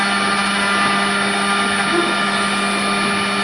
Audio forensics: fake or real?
real